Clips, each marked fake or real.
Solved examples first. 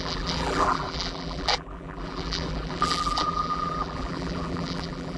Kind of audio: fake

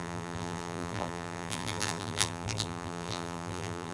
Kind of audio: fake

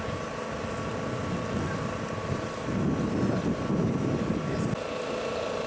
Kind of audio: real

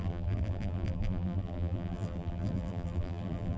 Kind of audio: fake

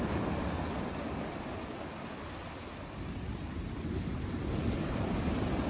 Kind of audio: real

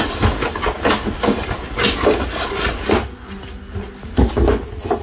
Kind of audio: real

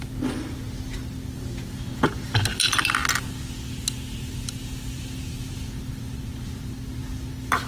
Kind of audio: real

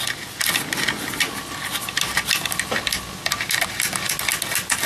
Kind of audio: real